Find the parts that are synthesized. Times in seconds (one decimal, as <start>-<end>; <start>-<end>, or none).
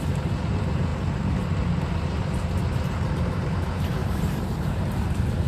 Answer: 0.0-5.5